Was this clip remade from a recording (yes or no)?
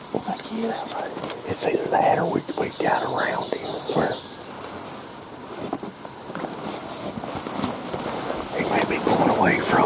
no